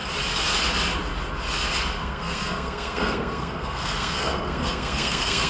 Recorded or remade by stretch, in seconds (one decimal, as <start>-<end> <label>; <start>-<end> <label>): 0.0-2.0 recorded; 2.0-5.5 remade